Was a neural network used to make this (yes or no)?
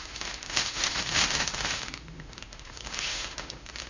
yes